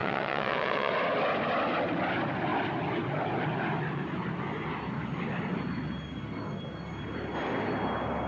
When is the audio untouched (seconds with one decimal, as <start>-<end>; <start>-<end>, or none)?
0.9-8.3